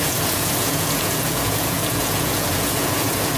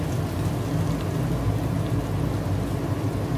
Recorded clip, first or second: second